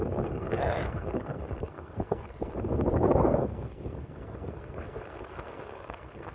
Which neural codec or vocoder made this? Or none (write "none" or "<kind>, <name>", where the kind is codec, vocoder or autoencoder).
codec, SNAC